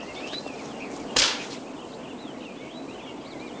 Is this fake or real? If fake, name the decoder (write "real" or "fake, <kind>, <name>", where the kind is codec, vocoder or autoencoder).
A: real